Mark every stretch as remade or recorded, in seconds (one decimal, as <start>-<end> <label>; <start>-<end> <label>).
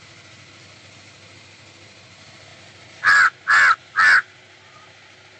0.0-5.4 recorded